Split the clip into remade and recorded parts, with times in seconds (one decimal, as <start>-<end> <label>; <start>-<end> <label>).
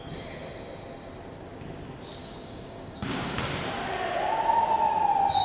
0.0-2.2 recorded; 2.2-3.4 remade; 3.4-5.4 recorded